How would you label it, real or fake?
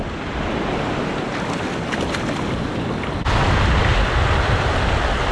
real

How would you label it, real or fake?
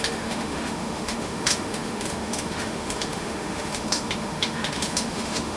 fake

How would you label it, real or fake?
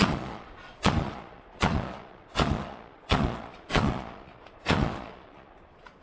fake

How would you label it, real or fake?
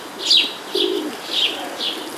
real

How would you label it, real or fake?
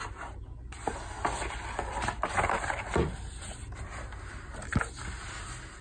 real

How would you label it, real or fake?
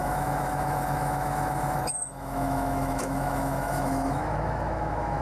fake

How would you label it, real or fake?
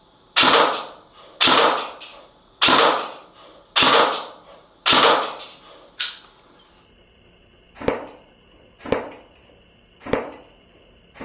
real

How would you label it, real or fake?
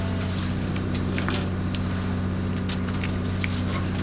real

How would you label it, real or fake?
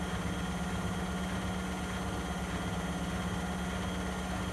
real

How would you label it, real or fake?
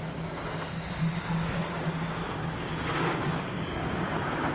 fake